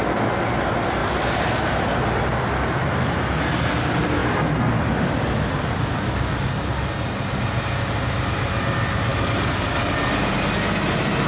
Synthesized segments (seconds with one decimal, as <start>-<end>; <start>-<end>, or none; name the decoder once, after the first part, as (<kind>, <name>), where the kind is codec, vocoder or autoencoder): none

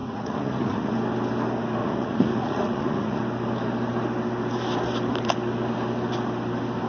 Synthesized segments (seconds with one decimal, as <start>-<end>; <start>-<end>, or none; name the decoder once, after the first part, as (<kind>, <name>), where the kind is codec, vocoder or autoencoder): 0.0-0.9 (vocoder, Vocos); 1.8-3.2

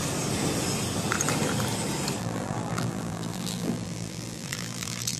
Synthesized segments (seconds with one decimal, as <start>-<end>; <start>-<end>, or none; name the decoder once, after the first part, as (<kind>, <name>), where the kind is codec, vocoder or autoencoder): 2.2-5.2 (vocoder, BigVGAN v2)

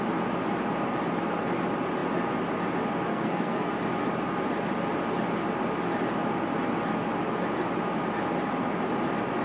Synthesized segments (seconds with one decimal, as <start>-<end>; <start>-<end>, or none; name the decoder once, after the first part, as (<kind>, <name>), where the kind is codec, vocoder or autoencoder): 3.1-3.7 (codec, SNAC)

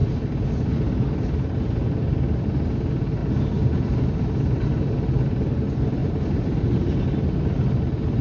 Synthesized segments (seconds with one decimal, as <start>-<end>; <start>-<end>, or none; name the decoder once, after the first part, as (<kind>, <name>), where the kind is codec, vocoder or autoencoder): 0.0-0.5 (vocoder, BigVGAN v2); 6.0-6.6

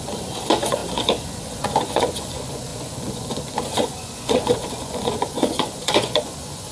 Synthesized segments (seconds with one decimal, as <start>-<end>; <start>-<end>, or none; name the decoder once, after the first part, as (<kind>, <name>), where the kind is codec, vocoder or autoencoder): 0.0-6.7 (vocoder, Vocos)

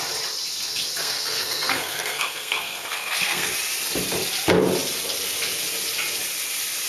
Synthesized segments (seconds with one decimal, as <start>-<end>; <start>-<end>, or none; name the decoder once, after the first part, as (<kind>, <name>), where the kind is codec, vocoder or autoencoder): 1.0-3.5 (codec, SNAC)